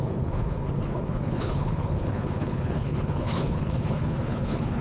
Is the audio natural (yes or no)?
no